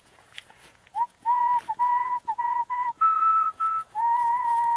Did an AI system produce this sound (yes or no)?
yes